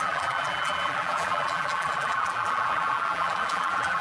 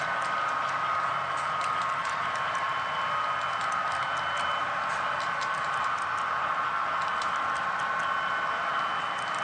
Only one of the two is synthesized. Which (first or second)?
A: first